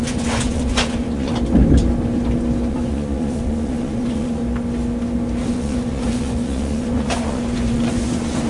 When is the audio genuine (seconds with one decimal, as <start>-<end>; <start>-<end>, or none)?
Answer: 1.3-2.7; 4.4-5.4